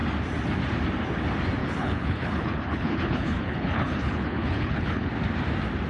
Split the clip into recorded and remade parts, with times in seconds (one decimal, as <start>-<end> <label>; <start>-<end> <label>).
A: 0.0-1.6 recorded; 1.6-5.1 remade; 5.1-5.9 recorded